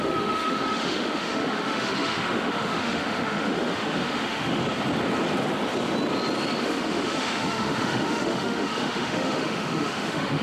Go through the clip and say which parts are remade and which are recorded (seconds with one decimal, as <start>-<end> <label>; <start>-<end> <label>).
0.0-4.6 remade; 4.6-6.6 recorded; 6.6-10.4 remade